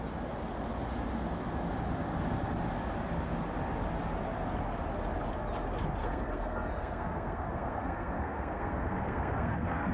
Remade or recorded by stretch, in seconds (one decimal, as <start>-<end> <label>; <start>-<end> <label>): 0.0-6.0 recorded; 6.0-9.9 remade